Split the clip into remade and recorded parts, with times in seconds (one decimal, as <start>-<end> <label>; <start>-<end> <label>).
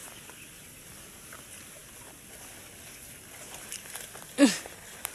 0.0-5.1 recorded